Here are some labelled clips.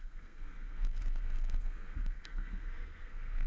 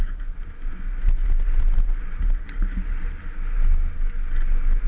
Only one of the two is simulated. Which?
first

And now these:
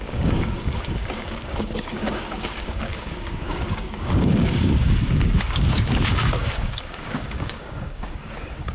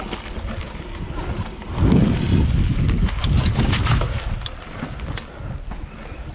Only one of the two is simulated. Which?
first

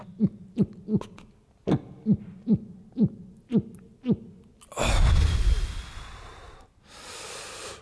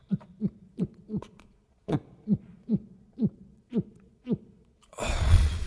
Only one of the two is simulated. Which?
second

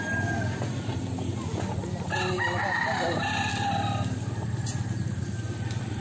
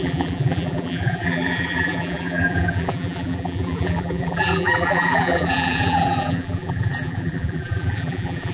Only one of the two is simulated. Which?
second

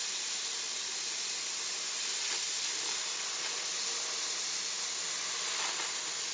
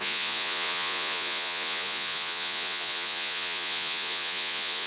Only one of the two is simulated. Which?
second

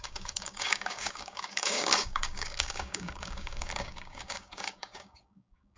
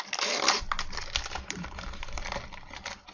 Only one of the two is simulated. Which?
first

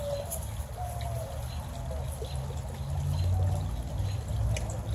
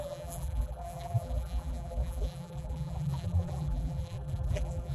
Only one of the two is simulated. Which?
second